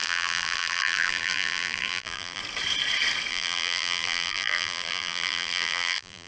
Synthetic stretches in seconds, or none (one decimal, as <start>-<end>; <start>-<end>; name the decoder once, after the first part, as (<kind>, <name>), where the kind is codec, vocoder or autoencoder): 0.0-2.4 (vocoder, BigVGAN v2); 3.3-6.3